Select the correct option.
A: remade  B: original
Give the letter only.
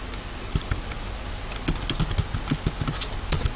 B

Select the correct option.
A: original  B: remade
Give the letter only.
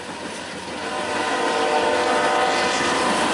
A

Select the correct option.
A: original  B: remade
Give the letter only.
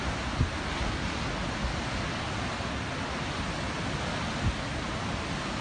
A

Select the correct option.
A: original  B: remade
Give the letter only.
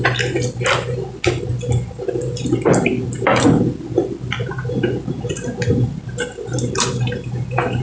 A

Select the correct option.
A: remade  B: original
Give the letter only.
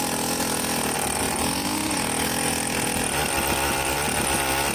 B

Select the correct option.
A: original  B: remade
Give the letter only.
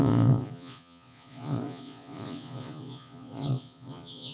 B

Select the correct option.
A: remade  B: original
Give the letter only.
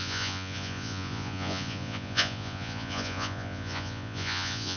A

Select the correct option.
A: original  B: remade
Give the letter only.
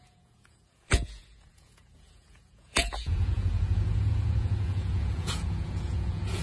B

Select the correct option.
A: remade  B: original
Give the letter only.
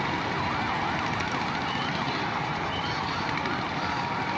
B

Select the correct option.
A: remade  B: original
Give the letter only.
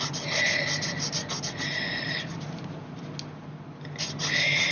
B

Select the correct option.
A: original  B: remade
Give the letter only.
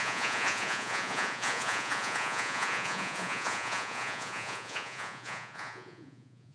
B